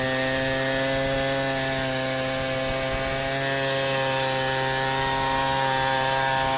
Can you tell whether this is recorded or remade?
recorded